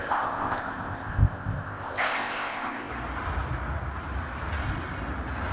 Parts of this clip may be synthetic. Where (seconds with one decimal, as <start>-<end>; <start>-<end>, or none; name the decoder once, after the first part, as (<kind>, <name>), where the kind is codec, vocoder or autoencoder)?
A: 0.0-2.9 (codec, ZipCodec)